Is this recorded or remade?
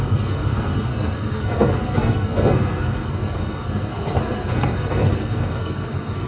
remade